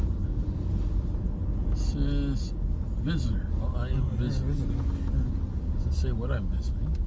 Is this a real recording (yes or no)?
yes